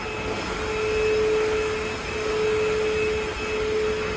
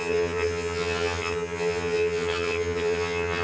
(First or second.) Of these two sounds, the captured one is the first